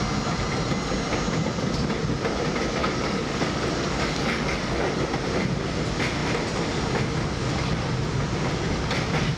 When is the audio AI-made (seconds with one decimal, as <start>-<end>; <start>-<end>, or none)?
2.8-5.0